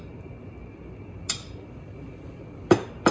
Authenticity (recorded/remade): recorded